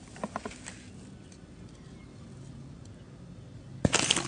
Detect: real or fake real